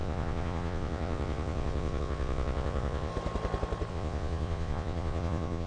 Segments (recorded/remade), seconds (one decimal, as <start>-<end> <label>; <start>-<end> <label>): 0.0-3.1 remade; 3.1-3.9 recorded; 3.9-5.7 remade